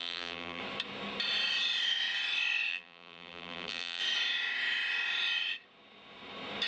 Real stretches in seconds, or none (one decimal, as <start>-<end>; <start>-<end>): 0.6-2.7; 4.0-6.7